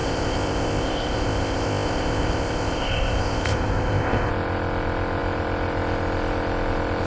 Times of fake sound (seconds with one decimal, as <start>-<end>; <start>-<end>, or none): 0.0-4.3